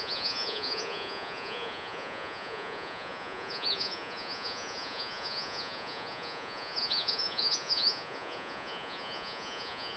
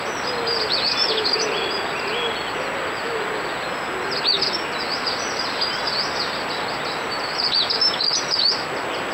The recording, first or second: second